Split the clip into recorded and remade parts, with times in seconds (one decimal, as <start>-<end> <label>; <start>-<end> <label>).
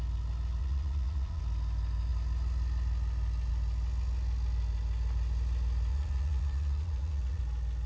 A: 0.0-0.6 recorded; 0.6-1.4 remade; 1.4-5.9 recorded; 5.9-7.4 remade; 7.4-7.9 recorded